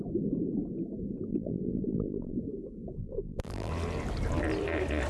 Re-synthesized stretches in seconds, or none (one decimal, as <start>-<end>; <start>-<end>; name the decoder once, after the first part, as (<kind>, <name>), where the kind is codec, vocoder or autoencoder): 1.3-2.4 (vocoder, BigVGAN v2); 3.0-3.7

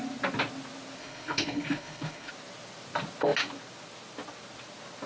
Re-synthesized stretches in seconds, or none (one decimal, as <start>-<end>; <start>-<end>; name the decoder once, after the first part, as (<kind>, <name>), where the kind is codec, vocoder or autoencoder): 1.0-2.3 (codec, HILCodec)